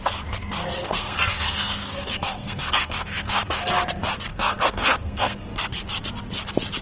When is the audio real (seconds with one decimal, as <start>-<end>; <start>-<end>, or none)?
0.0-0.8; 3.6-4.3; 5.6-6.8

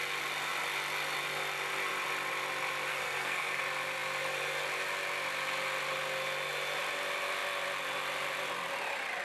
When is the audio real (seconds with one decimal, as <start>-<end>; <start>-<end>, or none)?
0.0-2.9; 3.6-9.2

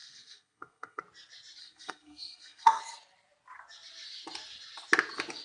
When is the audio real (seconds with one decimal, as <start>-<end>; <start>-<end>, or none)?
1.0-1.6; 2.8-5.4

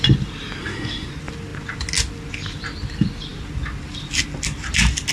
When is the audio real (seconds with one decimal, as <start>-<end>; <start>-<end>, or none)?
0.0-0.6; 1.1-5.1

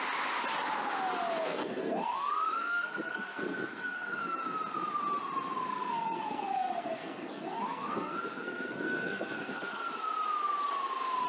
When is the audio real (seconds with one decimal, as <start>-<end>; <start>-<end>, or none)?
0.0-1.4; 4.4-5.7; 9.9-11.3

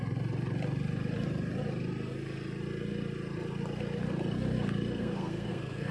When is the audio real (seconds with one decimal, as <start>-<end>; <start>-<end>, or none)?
0.0-5.0

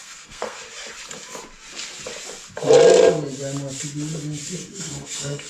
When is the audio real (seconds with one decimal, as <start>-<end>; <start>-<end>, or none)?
0.6-4.6

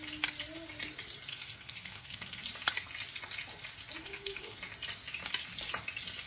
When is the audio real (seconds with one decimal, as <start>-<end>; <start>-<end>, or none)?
0.0-1.3; 2.4-4.0; 4.6-6.3